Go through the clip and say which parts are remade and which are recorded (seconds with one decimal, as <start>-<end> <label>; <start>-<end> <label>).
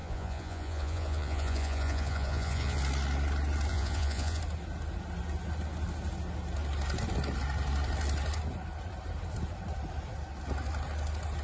0.0-2.8 remade; 2.8-3.7 recorded; 3.7-4.4 remade; 4.4-11.4 recorded